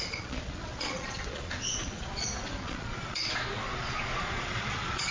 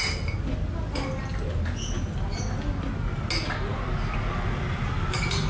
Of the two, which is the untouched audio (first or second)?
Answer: second